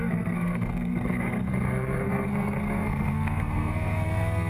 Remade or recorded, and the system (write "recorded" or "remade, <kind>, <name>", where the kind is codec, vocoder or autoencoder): remade, codec, SNAC